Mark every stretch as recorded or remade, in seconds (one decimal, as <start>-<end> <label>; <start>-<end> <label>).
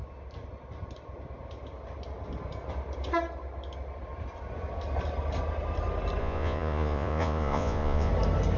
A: 0.0-6.2 recorded; 6.2-8.1 remade; 8.1-8.6 recorded